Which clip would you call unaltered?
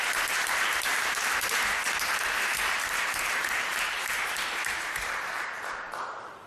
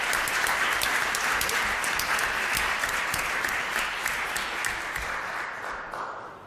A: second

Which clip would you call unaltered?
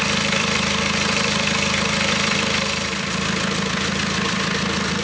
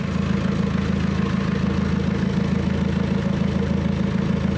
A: second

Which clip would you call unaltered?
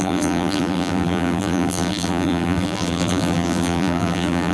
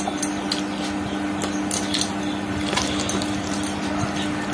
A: second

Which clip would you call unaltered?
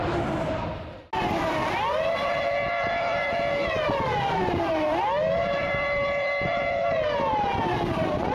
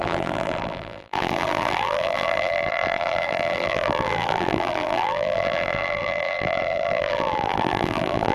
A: first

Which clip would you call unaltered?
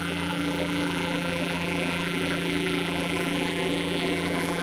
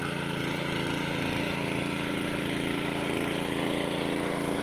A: second